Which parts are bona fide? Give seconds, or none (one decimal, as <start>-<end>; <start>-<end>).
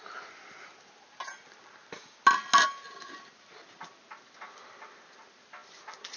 0.0-6.2